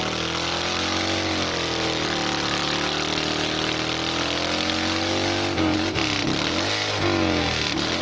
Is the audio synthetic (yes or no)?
no